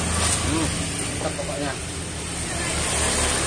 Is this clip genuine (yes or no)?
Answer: yes